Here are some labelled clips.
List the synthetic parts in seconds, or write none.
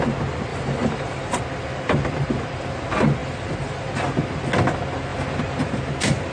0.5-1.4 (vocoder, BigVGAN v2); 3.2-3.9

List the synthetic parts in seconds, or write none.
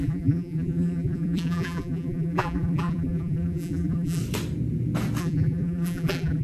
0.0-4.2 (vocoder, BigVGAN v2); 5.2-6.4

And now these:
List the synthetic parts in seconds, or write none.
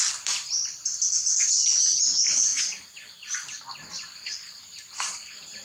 none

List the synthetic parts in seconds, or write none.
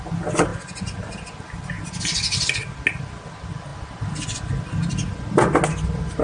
none